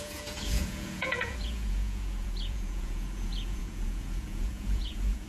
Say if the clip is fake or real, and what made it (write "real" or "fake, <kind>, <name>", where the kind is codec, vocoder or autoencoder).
fake, vocoder, Vocos